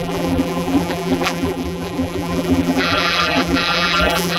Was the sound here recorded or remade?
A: remade